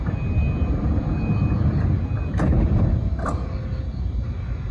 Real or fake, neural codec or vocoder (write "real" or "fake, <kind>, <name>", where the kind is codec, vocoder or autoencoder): real